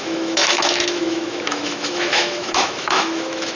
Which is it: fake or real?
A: fake